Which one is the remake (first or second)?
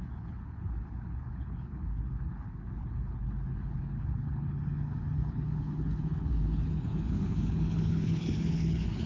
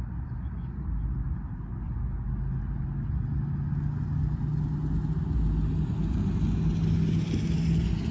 first